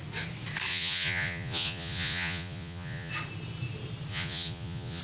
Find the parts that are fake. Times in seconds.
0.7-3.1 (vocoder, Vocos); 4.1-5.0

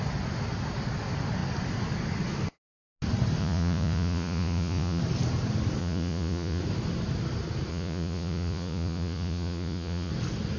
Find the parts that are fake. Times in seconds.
3.4-5.0 (vocoder, Vocos); 5.8-6.6; 7.7-10.1

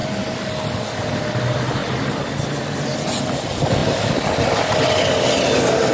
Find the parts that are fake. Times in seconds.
none

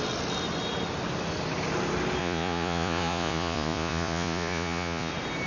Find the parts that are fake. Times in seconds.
2.2-5.1 (vocoder, Vocos)

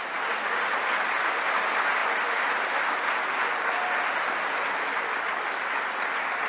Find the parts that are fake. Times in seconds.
none

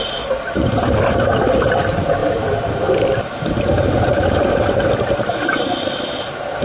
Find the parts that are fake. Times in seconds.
none